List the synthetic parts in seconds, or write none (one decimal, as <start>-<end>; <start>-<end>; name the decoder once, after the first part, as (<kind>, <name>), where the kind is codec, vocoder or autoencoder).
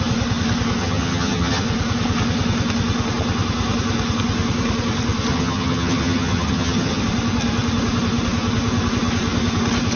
0.8-1.6 (vocoder, HiFi-GAN); 5.3-7.0